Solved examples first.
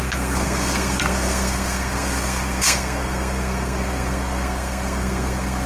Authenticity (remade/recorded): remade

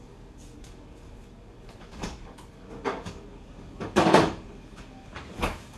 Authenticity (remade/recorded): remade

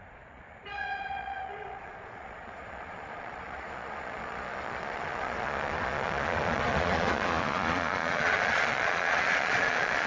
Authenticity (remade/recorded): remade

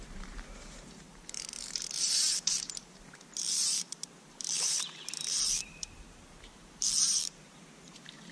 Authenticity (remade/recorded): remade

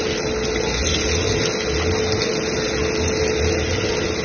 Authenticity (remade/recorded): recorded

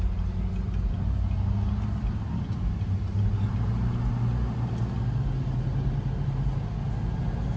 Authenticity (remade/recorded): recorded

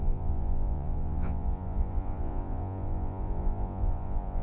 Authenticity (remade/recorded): remade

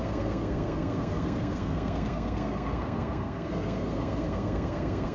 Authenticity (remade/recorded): remade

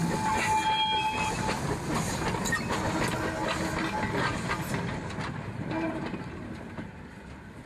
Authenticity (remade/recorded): recorded